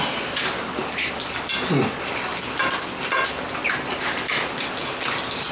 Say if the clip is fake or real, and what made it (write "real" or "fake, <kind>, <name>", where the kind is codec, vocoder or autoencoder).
real